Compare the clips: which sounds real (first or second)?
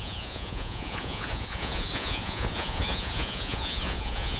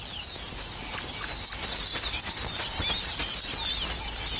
second